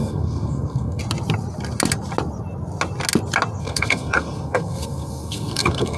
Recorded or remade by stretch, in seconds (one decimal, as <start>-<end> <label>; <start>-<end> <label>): 0.0-1.0 remade; 1.0-3.6 recorded; 3.6-6.0 remade